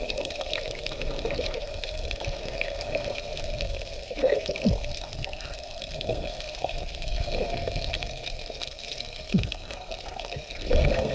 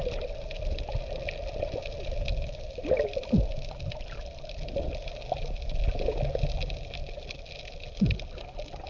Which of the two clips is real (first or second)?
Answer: second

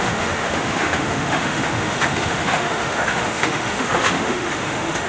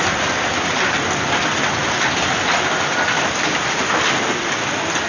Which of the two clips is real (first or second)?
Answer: second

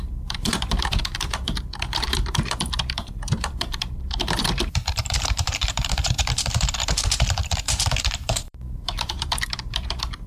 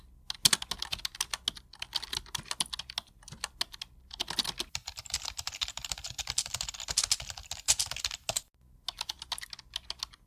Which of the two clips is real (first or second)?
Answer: second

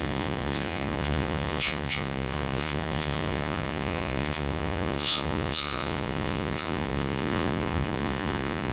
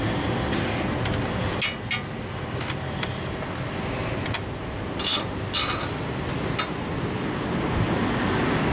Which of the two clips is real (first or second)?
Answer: second